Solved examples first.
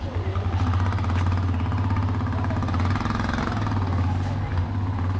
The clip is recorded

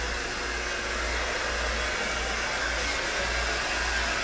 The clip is recorded